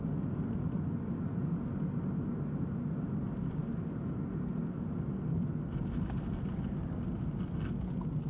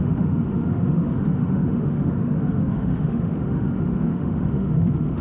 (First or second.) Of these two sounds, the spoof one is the second